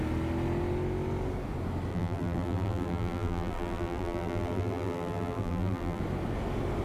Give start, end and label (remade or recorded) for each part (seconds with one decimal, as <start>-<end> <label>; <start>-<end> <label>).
0.0-1.9 recorded; 1.9-6.0 remade; 6.0-6.8 recorded